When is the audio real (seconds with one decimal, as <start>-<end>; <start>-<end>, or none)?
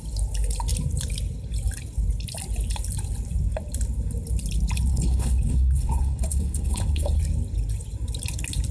0.0-4.9; 7.2-8.7